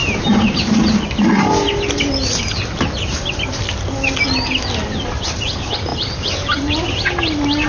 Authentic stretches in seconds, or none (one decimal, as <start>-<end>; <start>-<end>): 0.8-5.9; 6.7-7.7